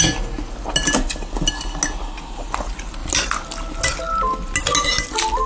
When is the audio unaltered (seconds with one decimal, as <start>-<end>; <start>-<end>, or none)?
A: 0.0-5.5